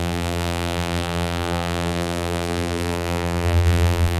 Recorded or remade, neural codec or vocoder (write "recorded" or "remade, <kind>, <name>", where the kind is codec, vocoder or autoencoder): remade, vocoder, BigVGAN v2